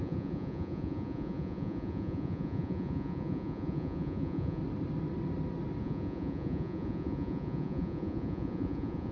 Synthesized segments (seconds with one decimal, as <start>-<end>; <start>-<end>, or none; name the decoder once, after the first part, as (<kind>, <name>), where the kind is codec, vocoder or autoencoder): 0.0-4.6 (vocoder, Vocos); 5.8-9.1

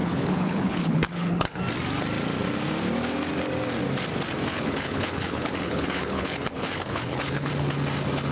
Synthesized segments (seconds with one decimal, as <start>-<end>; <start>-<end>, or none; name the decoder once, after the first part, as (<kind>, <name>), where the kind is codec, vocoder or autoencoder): 0.0-1.6 (codec, HILCodec); 4.5-7.5

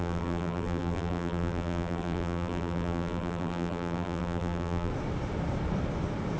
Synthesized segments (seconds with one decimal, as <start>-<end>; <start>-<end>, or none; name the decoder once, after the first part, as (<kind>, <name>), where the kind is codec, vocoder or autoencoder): 0.0-4.9 (vocoder, BigVGAN v2)

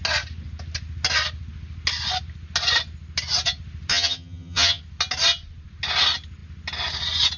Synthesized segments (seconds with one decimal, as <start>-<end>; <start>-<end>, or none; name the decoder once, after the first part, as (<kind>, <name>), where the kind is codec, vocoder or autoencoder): 3.9-4.8 (vocoder, HiFi-GAN)

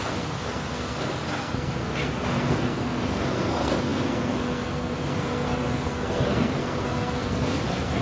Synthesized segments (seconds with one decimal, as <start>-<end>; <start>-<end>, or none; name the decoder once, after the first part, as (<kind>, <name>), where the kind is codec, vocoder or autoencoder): 0.0-8.0 (codec, SNAC)

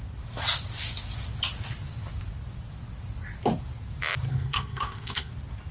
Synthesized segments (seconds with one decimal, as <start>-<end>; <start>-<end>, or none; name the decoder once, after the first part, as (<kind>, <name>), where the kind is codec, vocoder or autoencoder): 4.3-5.3 (codec, SNAC)